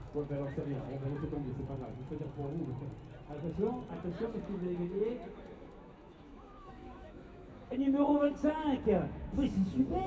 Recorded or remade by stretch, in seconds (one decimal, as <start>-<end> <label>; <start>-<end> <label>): 0.0-1.5 remade; 1.5-4.4 recorded; 4.4-10.1 remade